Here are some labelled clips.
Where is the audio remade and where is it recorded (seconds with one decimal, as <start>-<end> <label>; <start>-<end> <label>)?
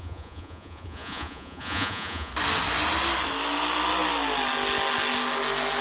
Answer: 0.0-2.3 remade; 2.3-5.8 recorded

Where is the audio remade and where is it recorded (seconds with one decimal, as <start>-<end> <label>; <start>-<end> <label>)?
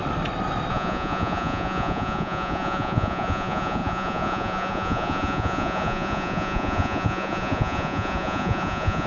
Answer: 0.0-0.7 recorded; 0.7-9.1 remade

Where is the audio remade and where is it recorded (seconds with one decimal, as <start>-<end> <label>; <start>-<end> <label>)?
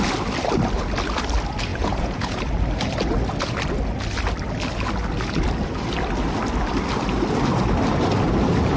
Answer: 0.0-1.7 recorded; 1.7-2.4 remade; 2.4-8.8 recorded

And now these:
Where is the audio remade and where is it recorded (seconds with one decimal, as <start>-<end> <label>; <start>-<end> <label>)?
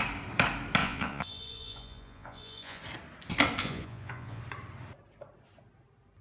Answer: 0.0-0.8 recorded; 0.8-2.8 remade; 2.8-3.6 recorded; 3.6-4.4 remade; 4.4-6.2 recorded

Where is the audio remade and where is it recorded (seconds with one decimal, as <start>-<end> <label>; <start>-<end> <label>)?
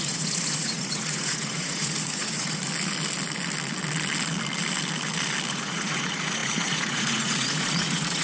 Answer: 0.0-2.6 remade; 2.6-5.5 recorded; 5.5-8.2 remade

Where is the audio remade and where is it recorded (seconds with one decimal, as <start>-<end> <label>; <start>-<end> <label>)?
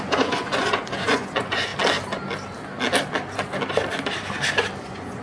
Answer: 0.0-1.7 remade; 1.7-4.8 recorded; 4.8-5.2 remade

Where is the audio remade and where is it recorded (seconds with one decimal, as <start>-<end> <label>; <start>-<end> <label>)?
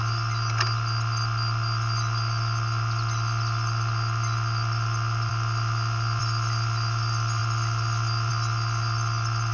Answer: 0.0-9.5 recorded